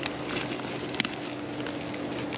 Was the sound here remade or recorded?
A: recorded